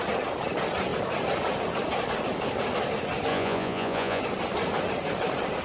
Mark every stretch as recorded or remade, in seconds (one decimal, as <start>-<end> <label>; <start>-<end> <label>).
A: 0.0-3.3 recorded; 3.3-4.2 remade; 4.2-5.6 recorded